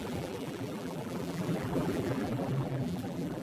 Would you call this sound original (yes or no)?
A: no